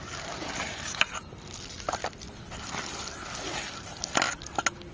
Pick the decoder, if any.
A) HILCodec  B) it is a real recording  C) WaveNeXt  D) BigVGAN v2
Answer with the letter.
B